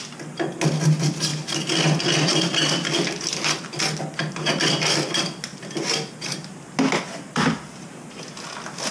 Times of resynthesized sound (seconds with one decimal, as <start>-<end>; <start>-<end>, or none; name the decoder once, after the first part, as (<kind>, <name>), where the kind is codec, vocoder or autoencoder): none